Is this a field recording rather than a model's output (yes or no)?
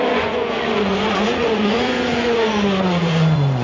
no